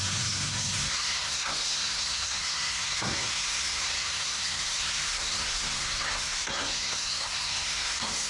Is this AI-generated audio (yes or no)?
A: yes